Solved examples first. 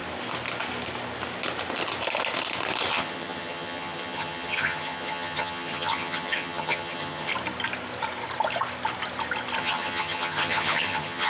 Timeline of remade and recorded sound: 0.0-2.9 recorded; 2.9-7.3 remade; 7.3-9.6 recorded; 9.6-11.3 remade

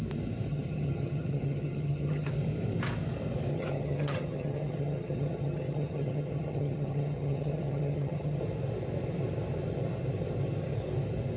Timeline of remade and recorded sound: 0.0-0.5 recorded; 0.5-2.3 remade; 2.3-3.5 recorded; 3.5-8.4 remade; 8.4-11.4 recorded

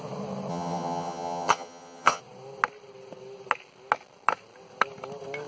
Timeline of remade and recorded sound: 0.0-0.5 recorded; 0.5-2.2 remade; 2.2-5.5 recorded

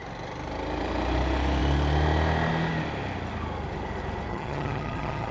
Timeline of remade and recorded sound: 0.0-4.3 recorded; 4.3-5.3 remade

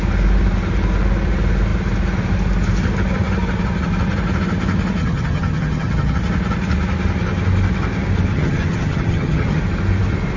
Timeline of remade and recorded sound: 0.0-5.0 recorded; 5.0-6.2 remade; 6.2-8.3 recorded; 8.3-9.6 remade; 9.6-10.4 recorded

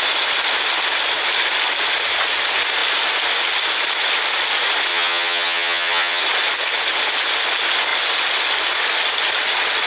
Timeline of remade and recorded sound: 0.0-4.9 recorded; 4.9-6.2 remade; 6.2-9.9 recorded